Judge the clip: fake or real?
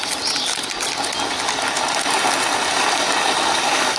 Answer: real